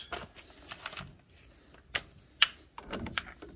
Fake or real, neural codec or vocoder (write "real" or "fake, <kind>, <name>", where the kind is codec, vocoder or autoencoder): real